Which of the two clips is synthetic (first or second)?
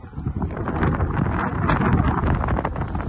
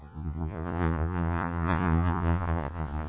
second